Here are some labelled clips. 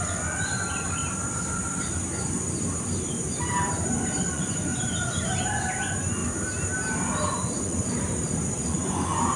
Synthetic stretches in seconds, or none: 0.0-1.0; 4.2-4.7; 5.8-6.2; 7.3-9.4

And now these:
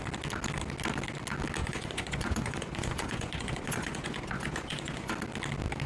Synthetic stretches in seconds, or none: 1.6-5.1

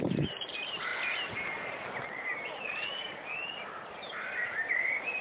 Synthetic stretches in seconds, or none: none

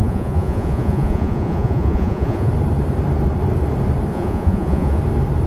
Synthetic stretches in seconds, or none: 0.0-2.5; 4.1-5.0

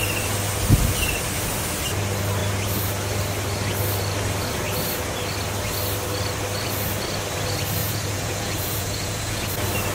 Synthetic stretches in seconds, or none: 7.8-9.5